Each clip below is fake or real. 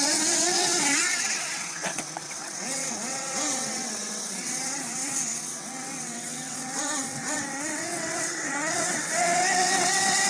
fake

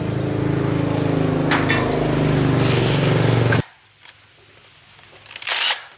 real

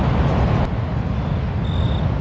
real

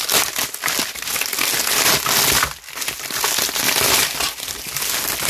real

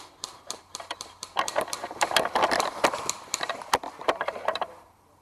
fake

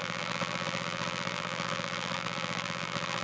fake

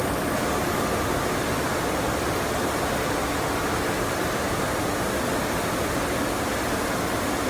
real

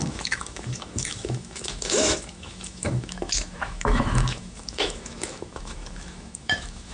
fake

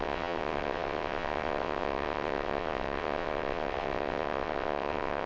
fake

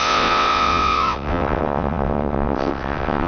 fake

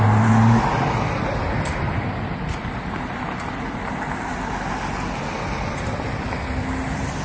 real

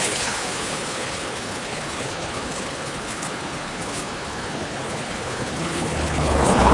fake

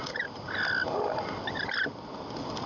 real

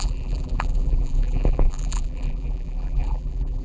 fake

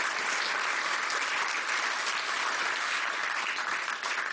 real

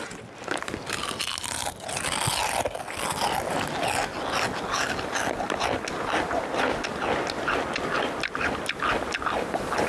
real